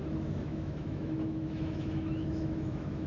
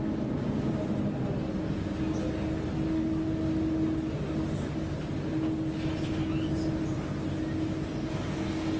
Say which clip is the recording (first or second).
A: second